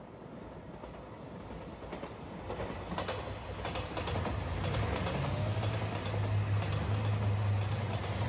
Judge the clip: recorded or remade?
recorded